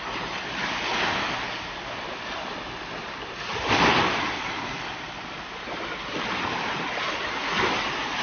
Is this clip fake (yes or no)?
no